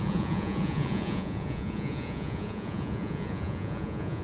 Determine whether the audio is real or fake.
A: fake